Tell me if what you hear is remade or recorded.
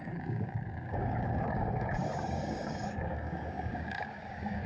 remade